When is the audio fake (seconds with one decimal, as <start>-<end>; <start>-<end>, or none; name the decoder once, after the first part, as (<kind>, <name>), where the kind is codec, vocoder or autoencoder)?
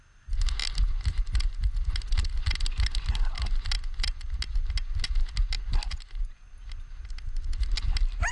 none